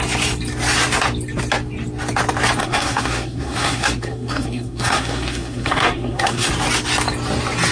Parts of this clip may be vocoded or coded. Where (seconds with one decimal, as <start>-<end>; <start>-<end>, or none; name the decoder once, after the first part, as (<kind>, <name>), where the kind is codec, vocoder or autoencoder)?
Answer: 2.6-6.5 (codec, SNAC)